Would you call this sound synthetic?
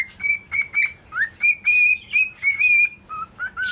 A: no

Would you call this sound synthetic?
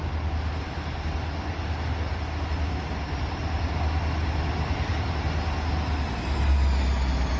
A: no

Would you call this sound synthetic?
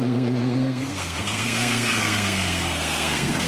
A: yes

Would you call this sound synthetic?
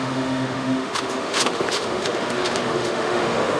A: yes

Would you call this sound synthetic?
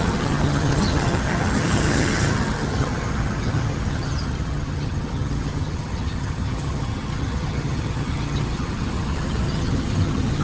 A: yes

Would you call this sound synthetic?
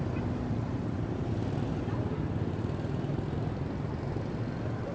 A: no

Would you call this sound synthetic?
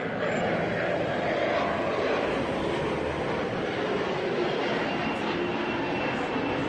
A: no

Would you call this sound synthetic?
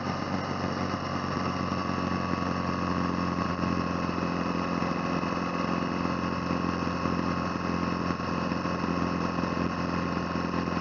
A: no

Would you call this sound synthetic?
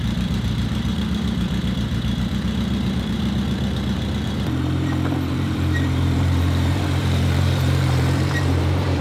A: yes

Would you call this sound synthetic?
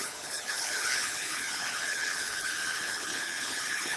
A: yes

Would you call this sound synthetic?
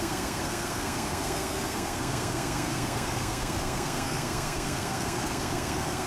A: yes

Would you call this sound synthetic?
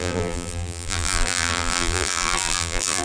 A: yes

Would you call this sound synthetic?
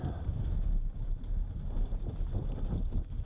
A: no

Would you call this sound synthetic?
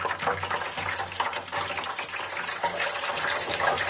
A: no